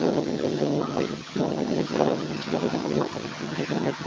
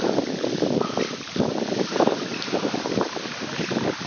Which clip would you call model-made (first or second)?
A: first